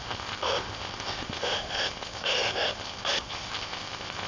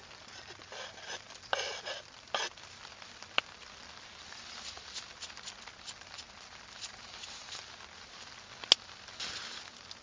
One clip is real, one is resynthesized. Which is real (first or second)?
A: second